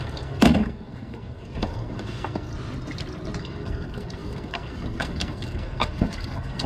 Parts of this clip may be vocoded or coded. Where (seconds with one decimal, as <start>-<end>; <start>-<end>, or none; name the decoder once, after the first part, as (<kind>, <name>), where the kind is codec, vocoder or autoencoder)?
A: 0.0-2.5 (codec, SNAC); 3.4-6.7